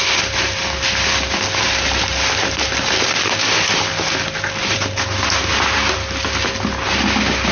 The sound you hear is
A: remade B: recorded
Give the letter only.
B